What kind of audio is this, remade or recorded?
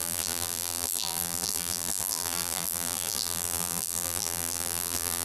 remade